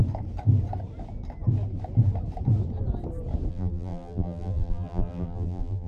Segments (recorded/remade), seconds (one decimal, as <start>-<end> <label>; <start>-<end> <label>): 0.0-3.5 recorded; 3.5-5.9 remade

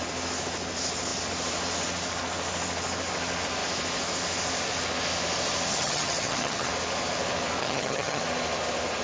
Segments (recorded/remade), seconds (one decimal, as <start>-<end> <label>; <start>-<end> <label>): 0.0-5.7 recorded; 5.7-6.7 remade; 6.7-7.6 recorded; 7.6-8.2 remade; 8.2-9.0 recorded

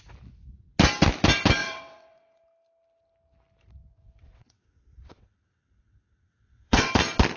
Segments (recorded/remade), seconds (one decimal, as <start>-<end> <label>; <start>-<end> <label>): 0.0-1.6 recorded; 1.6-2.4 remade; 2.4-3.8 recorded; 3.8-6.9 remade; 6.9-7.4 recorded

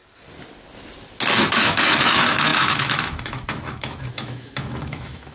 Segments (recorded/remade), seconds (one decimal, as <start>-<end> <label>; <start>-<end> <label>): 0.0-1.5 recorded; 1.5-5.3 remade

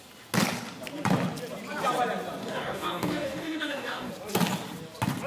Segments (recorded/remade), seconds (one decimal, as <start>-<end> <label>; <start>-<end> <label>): 0.0-2.4 recorded; 2.4-4.1 remade; 4.1-5.3 recorded